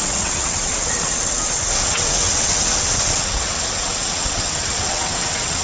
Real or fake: fake